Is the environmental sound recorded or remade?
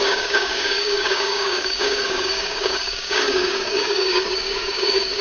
remade